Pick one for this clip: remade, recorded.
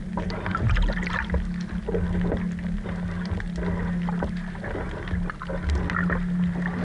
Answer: recorded